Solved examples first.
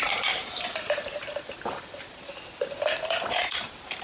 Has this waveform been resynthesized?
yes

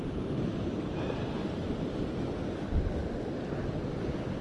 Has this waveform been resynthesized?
no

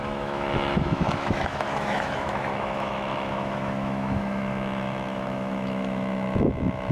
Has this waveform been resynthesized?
yes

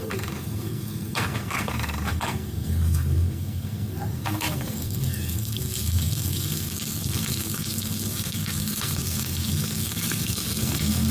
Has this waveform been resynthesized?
yes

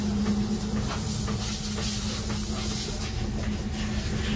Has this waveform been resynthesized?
no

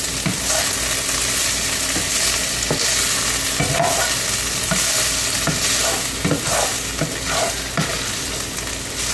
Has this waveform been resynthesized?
no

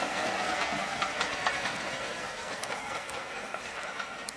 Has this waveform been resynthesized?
yes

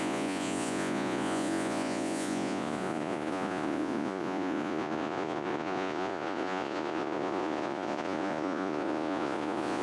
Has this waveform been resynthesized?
yes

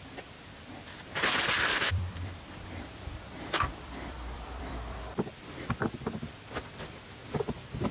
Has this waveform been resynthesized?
yes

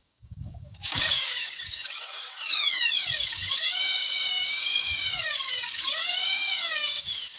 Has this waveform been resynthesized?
yes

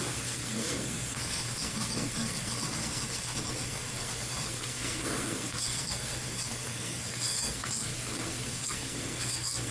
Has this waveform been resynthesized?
yes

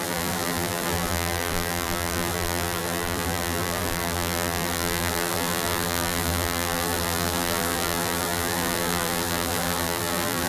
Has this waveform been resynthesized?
yes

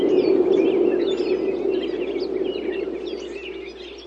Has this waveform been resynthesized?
no